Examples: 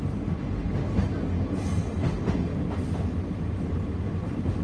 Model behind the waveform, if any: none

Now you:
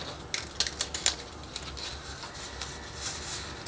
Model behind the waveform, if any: none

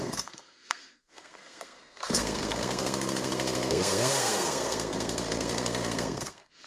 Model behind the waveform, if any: codec, SNAC